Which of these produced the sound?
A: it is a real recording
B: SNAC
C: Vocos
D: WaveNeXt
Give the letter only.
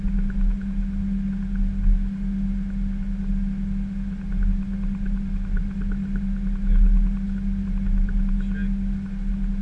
A